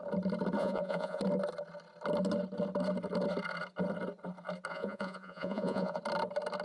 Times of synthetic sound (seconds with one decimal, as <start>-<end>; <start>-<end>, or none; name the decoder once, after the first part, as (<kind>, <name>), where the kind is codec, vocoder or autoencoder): 0.6-1.2 (vocoder, Vocos); 4.7-6.0